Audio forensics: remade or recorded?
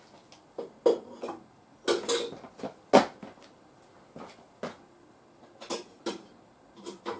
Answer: recorded